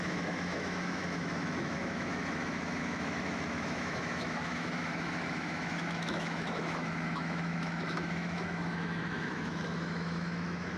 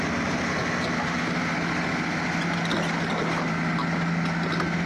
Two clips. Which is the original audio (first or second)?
second